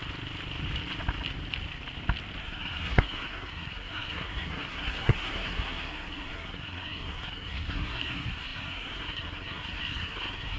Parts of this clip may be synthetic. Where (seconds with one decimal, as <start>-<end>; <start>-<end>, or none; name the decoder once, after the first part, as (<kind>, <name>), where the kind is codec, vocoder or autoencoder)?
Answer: 2.4-10.6 (codec, SNAC)